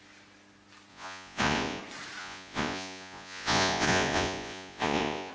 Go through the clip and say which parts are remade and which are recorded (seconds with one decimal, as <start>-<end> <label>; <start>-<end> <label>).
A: 0.0-0.9 recorded; 0.9-1.8 remade; 1.8-2.2 recorded; 2.2-5.3 remade